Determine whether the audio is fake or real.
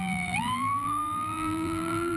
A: fake